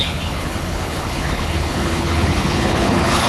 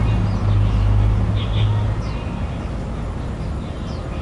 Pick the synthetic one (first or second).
first